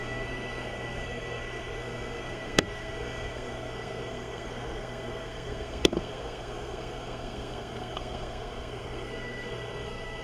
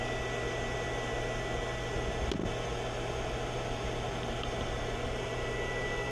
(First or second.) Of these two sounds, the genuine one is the second